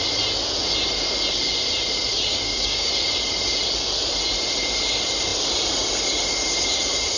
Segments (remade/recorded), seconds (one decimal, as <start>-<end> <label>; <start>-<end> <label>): 0.0-2.3 recorded; 2.3-2.9 remade; 2.9-7.2 recorded